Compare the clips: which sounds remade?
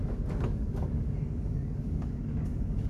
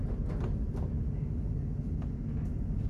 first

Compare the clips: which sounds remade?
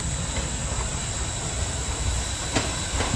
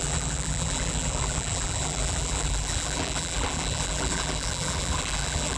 second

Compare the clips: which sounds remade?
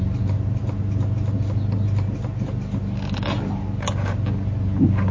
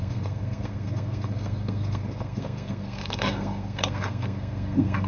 second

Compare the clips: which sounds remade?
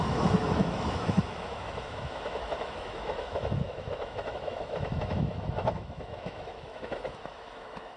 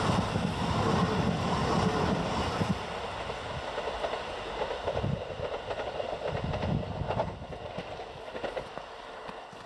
first